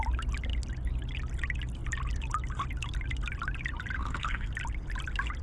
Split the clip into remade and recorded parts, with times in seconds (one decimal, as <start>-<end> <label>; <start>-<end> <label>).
0.0-4.0 recorded; 4.0-4.5 remade; 4.5-5.4 recorded